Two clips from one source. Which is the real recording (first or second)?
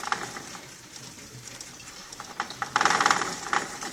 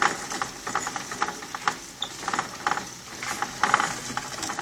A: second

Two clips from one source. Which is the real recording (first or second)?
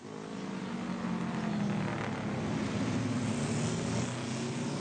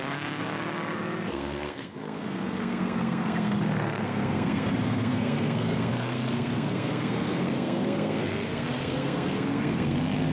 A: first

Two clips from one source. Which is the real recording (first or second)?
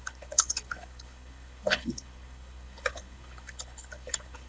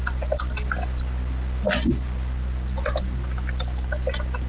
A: second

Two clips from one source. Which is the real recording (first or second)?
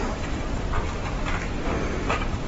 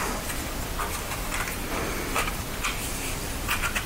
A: second